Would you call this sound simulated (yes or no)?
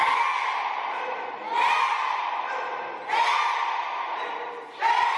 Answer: no